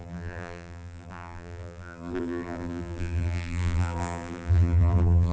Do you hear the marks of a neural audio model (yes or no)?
yes